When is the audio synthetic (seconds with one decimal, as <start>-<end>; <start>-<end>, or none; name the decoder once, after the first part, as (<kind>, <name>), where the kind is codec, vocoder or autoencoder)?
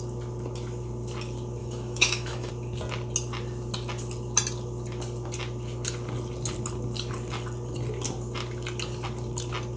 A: 1.6-2.5 (autoencoder, DAC-VAE)